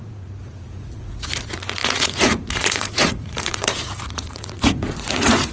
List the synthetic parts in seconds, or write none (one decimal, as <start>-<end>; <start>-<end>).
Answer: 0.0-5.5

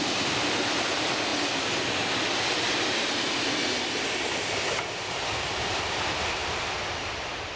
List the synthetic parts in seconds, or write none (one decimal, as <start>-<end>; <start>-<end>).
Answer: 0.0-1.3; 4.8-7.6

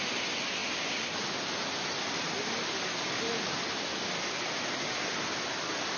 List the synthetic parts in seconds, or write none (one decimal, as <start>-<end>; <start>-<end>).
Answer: none